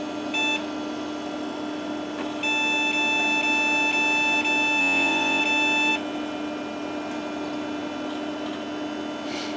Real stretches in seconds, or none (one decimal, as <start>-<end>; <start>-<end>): 0.0-4.8; 5.4-9.6